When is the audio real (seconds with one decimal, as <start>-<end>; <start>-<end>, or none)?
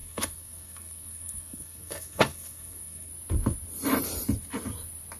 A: 3.1-5.2